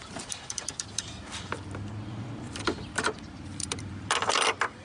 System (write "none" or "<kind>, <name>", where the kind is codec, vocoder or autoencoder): vocoder, BigVGAN v2